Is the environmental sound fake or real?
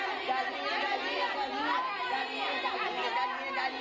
real